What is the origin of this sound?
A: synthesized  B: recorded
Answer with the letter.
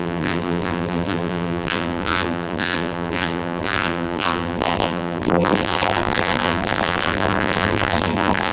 A